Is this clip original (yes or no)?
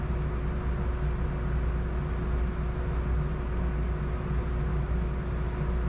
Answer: yes